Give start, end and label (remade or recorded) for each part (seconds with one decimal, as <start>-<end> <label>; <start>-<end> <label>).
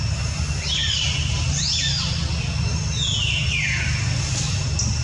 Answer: 0.0-5.0 recorded